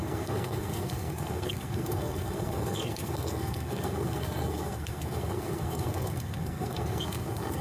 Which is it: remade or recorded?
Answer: remade